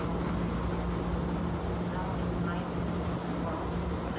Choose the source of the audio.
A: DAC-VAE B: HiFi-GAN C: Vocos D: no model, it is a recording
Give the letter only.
D